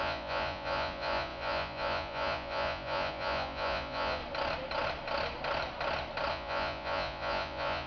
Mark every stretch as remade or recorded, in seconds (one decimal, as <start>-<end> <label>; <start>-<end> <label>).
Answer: 0.0-4.2 remade; 4.2-6.3 recorded; 6.3-7.9 remade